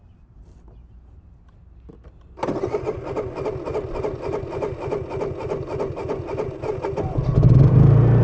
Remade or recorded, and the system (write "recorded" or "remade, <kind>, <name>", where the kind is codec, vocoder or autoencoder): recorded